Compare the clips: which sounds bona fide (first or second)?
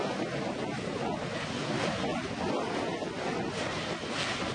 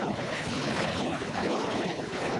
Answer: first